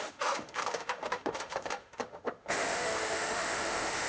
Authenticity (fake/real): fake